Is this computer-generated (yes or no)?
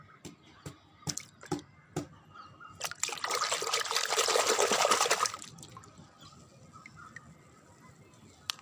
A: no